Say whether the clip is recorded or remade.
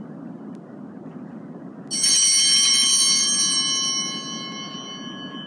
recorded